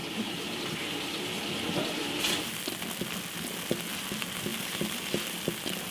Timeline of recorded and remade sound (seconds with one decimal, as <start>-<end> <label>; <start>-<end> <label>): 0.0-2.5 remade; 2.5-4.5 recorded; 4.5-5.5 remade; 5.5-5.9 recorded